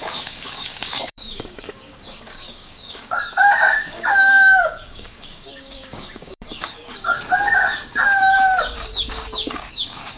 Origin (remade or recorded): remade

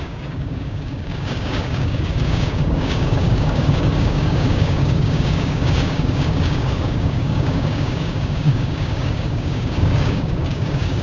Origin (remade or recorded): remade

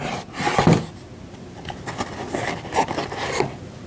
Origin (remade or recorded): recorded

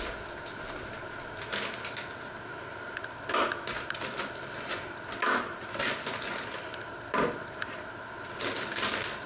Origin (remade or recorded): recorded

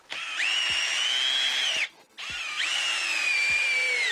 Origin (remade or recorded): recorded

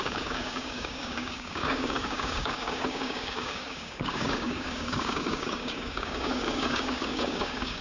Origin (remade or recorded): remade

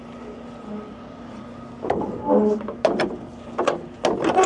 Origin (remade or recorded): recorded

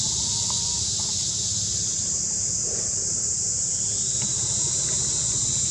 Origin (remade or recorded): recorded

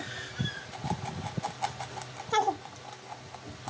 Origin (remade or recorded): recorded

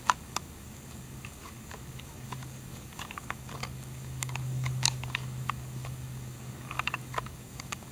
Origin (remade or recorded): remade